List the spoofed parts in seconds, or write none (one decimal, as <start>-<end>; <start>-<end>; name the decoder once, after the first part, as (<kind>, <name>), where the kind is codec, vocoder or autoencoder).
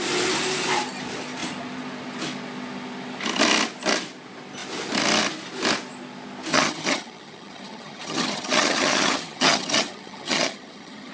6.5-11.1 (vocoder, HiFi-GAN)